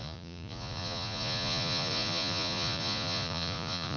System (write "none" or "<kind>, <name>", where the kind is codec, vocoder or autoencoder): vocoder, Vocos